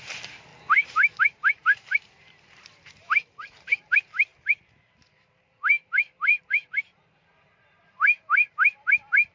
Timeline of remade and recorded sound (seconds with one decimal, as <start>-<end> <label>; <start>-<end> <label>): 0.0-0.5 remade; 0.5-1.2 recorded; 1.2-9.3 remade